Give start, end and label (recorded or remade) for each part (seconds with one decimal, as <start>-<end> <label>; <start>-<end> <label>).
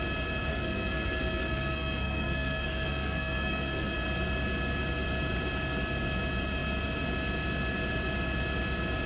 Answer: 0.0-0.5 recorded; 0.5-3.9 remade; 3.9-9.1 recorded